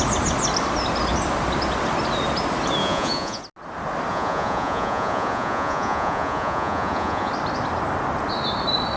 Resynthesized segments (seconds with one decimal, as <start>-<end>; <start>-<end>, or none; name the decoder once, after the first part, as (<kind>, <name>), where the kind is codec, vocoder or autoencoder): 2.8-3.4 (vocoder, Vocos); 4.1-7.3